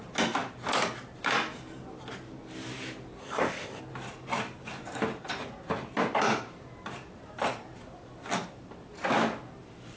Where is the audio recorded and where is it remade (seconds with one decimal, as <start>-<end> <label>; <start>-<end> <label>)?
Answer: 0.0-3.2 recorded; 3.2-3.8 remade; 3.8-10.0 recorded